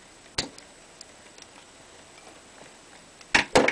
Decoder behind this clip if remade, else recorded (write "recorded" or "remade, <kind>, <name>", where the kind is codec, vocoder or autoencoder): recorded